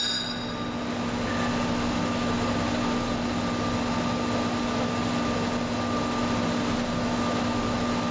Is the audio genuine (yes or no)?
yes